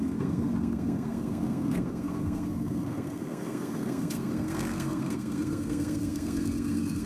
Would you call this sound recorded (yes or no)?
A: no